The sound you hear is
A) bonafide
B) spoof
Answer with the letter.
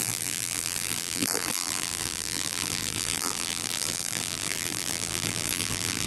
B